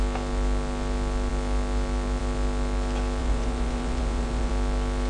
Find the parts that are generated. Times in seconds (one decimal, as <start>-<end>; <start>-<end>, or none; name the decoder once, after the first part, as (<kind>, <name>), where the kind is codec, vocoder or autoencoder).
3.2-4.5 (vocoder, Vocos)